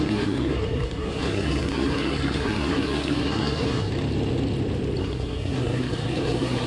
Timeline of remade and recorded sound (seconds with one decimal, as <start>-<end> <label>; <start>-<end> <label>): 0.0-3.9 remade; 3.9-5.0 recorded; 5.0-6.7 remade